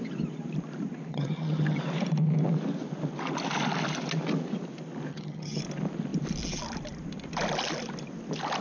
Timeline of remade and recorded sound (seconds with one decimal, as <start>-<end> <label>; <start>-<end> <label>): 0.0-1.1 recorded; 1.1-1.8 remade; 1.8-5.1 recorded; 5.1-5.6 remade; 5.6-8.6 recorded